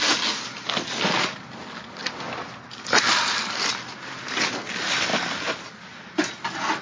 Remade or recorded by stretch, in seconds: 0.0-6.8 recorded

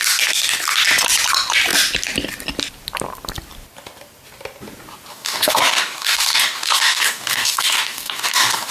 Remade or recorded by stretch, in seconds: 0.0-5.1 recorded; 5.1-8.7 remade

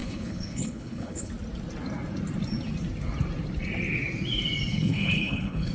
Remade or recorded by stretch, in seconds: 0.0-1.3 remade; 1.3-4.7 recorded; 4.7-5.7 remade

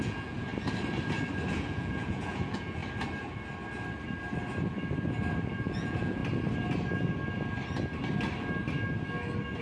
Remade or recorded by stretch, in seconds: 0.0-0.5 remade; 0.5-1.5 recorded; 1.5-2.8 remade; 2.8-5.5 recorded; 5.5-6.2 remade; 6.2-9.6 recorded